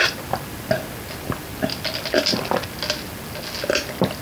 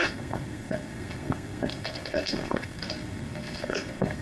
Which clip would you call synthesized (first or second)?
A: second